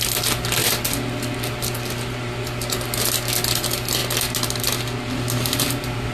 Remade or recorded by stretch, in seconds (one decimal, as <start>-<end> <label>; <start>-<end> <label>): 0.0-6.1 recorded